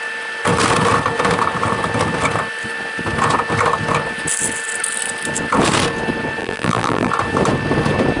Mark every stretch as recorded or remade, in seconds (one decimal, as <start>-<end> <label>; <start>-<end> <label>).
0.0-6.4 recorded; 6.4-7.1 remade; 7.1-8.2 recorded